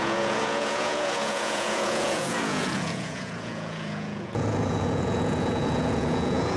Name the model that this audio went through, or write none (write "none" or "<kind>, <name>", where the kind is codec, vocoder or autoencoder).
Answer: vocoder, Vocos